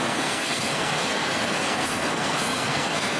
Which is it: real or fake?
fake